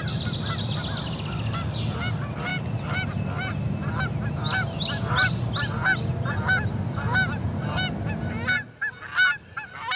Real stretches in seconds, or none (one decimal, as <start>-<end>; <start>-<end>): 0.0-2.5; 3.1-10.0